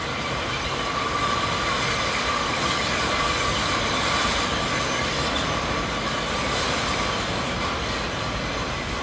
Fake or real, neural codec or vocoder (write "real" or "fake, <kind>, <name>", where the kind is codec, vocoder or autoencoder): real